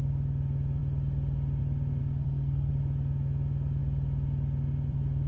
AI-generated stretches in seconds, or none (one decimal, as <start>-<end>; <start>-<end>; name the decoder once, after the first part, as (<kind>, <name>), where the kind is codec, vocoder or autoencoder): 2.0-2.7 (codec, SNAC)